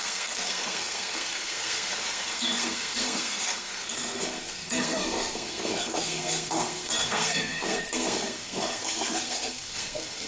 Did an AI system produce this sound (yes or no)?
yes